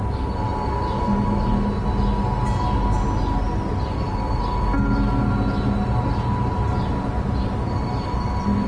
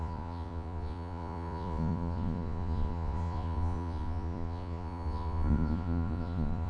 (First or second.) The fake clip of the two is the second